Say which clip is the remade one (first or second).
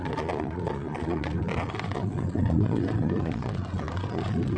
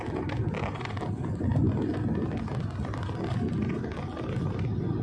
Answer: first